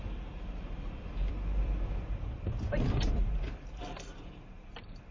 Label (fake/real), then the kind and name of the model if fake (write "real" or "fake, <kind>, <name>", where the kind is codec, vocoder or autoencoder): fake, vocoder, BigVGAN v2